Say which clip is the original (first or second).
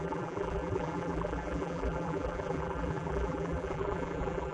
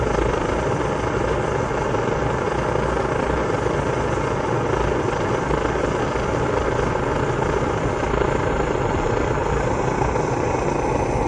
second